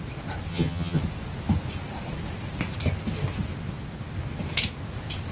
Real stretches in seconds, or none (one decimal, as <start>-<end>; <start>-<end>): 0.0-0.5; 1.0-5.3